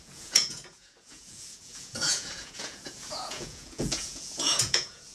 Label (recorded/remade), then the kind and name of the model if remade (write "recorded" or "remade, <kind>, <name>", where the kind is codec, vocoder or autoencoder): remade, vocoder, Vocos